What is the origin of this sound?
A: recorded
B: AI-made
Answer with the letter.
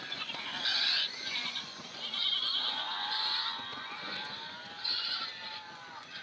B